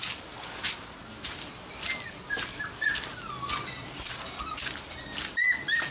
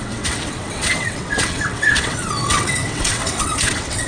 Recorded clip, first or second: first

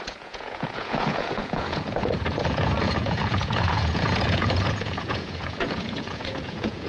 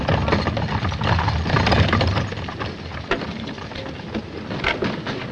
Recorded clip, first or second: second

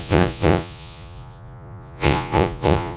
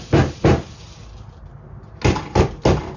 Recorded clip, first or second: second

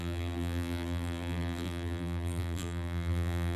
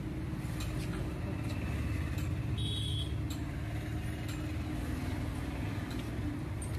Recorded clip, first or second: second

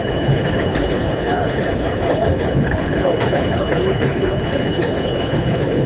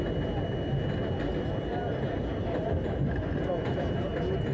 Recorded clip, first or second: second